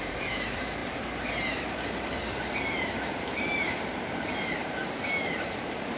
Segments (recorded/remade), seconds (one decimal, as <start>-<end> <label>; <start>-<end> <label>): 0.0-6.0 remade